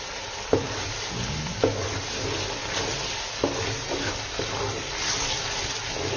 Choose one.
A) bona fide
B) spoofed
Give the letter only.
A